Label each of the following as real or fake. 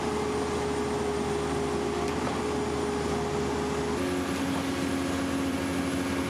real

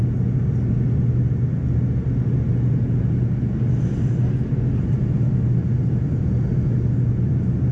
real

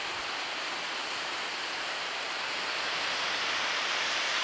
fake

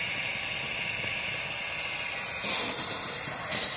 real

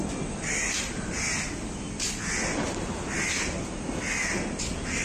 real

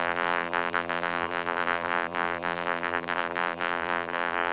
fake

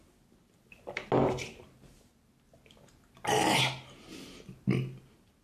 real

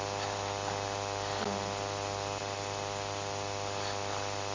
real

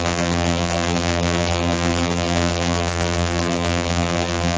fake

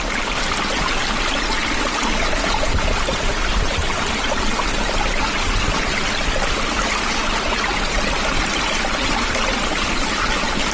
real